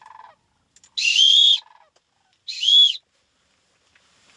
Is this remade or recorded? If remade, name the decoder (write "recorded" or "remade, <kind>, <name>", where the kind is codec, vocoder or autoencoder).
recorded